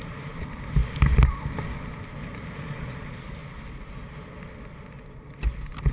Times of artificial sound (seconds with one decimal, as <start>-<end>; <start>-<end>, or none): 0.0-0.8; 2.2-3.4